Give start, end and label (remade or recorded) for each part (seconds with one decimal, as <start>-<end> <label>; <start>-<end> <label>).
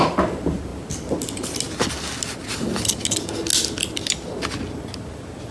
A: 0.0-5.5 recorded